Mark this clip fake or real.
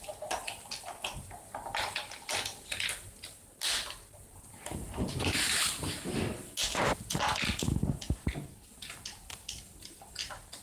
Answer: real